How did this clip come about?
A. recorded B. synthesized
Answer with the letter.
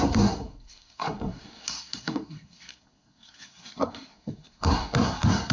B